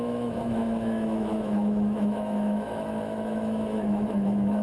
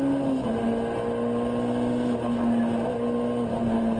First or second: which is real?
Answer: second